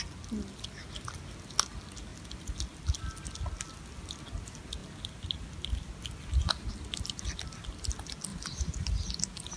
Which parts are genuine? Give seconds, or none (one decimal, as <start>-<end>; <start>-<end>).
0.0-4.8; 5.5-8.3; 9.1-9.6